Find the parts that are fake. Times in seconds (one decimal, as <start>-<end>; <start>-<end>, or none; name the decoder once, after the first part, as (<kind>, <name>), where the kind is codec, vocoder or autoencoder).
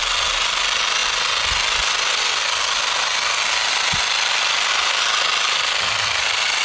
none